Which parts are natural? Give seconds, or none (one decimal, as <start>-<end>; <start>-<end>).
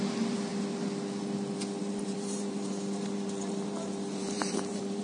0.0-1.8